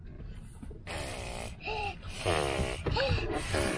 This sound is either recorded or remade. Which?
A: remade